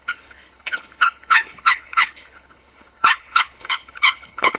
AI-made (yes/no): yes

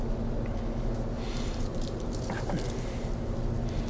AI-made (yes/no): no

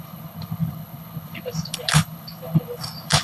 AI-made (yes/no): yes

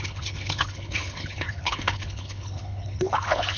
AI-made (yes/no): yes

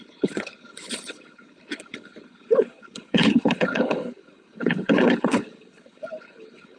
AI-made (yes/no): yes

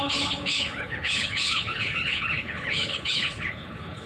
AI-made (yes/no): yes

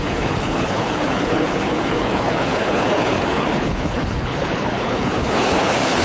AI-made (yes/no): yes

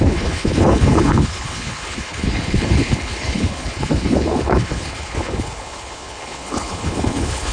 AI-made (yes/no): yes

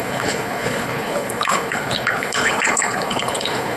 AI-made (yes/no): yes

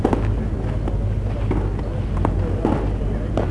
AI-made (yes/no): no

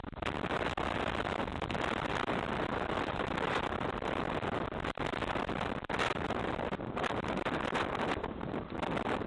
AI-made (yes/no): no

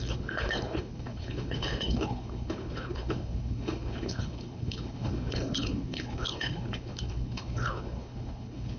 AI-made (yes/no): yes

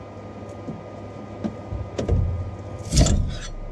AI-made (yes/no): no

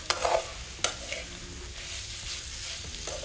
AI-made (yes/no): no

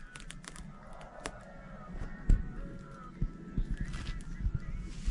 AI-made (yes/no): no